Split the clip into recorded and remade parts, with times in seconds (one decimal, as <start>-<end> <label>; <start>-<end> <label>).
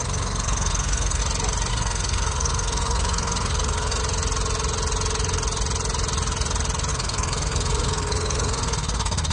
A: 0.0-1.2 remade; 1.2-1.7 recorded; 1.7-4.0 remade; 4.0-6.9 recorded; 6.9-9.3 remade